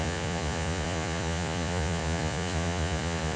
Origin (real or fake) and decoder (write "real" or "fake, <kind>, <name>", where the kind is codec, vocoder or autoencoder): fake, vocoder, Vocos